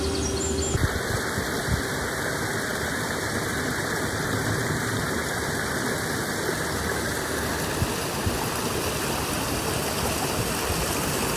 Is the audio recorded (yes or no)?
yes